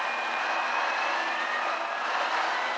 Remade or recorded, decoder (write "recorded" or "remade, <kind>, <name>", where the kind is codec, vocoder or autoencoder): recorded